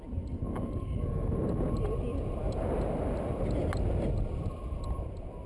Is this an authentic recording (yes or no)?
yes